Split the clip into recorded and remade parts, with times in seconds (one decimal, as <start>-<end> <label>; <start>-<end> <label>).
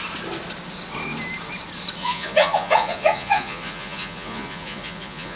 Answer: 0.0-2.0 recorded; 2.0-5.4 remade